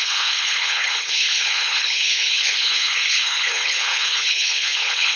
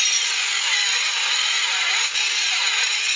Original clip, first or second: second